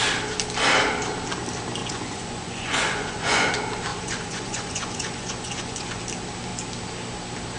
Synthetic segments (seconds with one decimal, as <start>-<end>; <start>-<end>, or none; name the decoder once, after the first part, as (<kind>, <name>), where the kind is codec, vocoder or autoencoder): 1.8-3.5 (vocoder, Vocos); 3.9-6.0